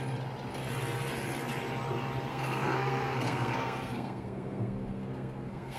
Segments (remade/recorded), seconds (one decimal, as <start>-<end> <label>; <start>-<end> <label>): 0.0-2.3 recorded; 2.3-5.8 remade